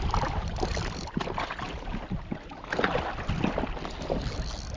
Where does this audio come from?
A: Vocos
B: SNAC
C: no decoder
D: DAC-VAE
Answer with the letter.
C